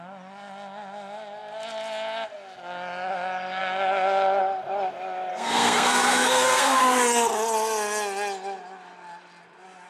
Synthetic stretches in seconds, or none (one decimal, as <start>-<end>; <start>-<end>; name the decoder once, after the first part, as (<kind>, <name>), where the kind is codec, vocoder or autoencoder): 5.3-6.8 (codec, SNAC)

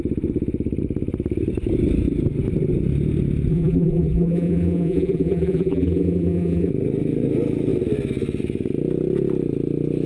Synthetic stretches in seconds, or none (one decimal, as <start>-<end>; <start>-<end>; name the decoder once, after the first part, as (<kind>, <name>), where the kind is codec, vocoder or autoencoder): 3.5-6.7 (vocoder, BigVGAN v2)

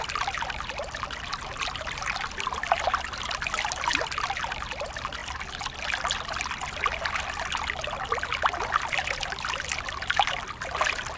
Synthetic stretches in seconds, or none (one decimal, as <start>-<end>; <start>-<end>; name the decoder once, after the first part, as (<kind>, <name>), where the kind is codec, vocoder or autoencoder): none